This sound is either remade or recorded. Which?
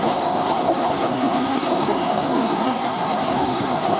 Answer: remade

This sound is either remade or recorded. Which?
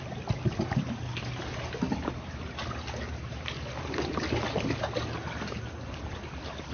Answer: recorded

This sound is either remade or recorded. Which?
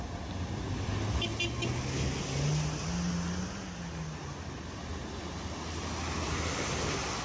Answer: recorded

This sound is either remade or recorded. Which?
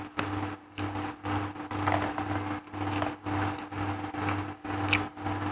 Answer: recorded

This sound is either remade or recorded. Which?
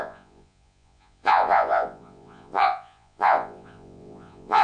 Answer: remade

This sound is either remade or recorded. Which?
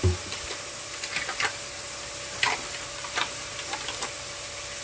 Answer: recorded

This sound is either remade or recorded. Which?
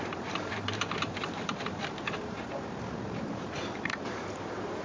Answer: remade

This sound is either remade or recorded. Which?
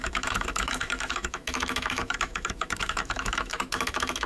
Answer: remade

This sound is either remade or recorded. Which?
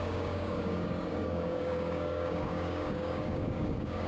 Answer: remade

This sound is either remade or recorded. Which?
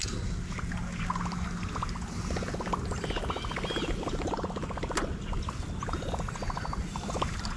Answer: recorded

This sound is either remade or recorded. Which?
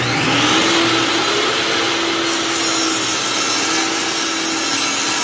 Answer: recorded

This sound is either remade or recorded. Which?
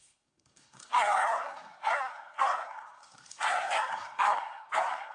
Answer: remade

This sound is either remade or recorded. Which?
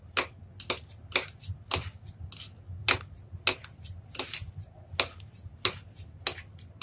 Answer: recorded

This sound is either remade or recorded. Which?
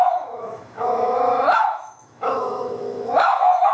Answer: remade